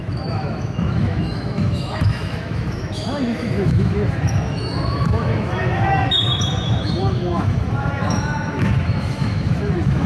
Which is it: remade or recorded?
remade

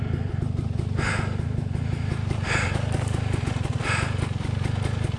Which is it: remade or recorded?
recorded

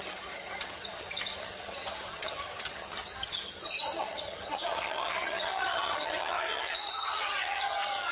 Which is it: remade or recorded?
remade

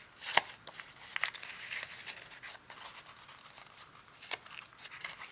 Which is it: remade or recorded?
recorded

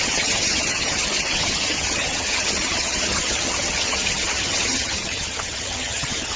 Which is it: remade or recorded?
remade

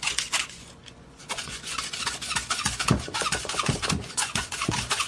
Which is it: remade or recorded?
remade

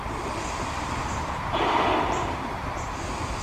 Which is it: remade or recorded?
remade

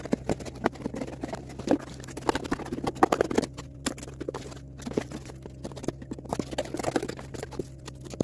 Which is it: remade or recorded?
recorded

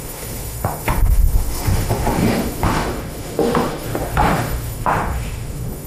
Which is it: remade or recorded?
remade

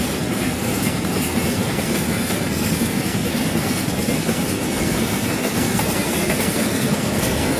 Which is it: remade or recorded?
remade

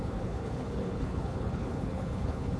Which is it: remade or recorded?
remade